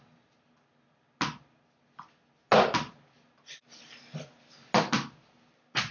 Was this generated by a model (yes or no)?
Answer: no